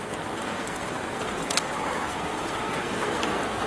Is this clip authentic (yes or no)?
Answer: no